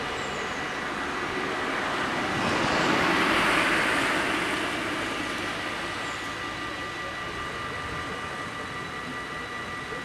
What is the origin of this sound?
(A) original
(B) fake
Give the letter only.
A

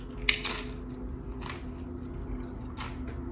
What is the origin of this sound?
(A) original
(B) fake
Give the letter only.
A